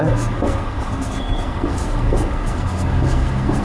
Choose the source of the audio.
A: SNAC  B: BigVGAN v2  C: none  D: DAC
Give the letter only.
A